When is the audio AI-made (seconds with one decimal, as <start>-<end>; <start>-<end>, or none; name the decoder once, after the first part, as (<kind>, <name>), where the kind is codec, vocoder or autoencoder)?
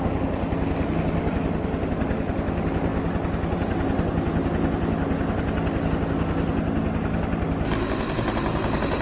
none